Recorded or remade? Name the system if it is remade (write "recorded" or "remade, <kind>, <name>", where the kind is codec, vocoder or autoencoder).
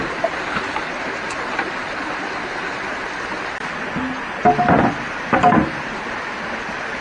recorded